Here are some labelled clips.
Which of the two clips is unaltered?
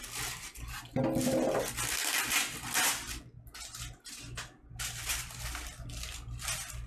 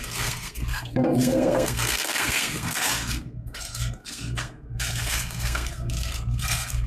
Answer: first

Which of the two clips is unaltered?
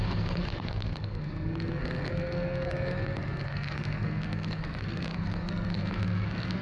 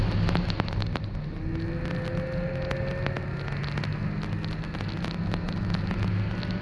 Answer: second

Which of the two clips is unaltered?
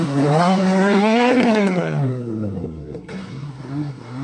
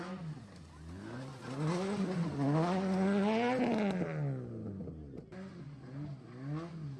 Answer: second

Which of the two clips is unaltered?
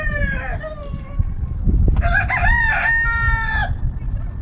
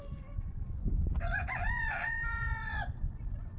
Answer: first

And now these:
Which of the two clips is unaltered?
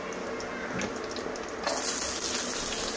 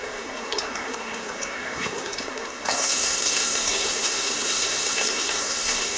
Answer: first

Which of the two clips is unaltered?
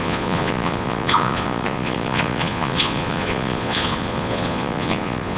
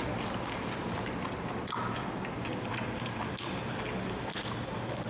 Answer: second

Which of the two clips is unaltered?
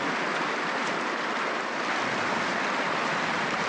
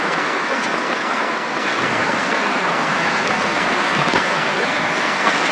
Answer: first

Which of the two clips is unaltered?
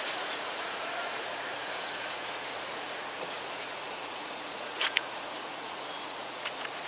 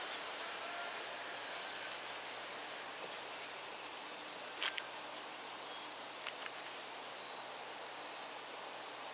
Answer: second